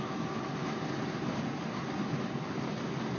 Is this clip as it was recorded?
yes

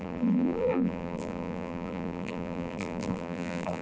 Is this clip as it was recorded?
no